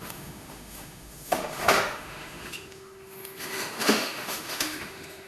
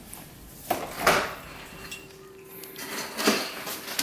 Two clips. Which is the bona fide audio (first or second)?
second